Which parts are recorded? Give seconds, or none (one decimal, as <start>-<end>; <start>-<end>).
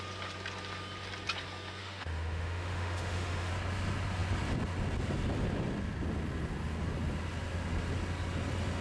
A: 0.0-1.8; 3.5-8.8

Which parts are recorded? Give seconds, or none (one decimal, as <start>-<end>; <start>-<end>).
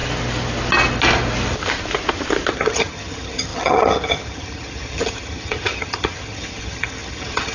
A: 0.0-2.5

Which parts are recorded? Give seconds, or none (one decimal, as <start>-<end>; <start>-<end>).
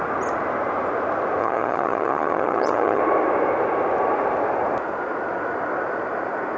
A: 0.0-1.4; 3.0-6.6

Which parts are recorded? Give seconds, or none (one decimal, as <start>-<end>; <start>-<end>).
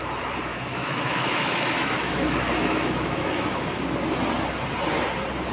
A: 0.0-0.5; 3.8-5.5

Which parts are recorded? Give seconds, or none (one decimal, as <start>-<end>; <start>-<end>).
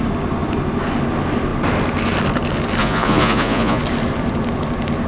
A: 0.0-2.8; 3.8-5.1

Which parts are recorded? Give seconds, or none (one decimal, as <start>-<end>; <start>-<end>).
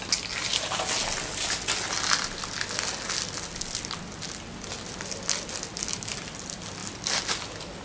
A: 0.0-7.8